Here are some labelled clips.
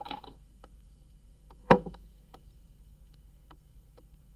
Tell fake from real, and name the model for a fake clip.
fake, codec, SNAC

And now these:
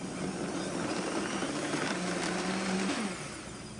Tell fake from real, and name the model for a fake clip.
real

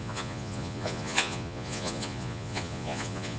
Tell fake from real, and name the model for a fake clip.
fake, vocoder, Vocos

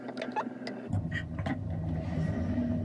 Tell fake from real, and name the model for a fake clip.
real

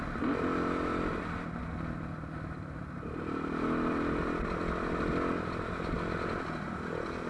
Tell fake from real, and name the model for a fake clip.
real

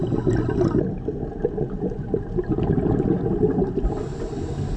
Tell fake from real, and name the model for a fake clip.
real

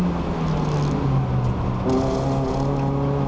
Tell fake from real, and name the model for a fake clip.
real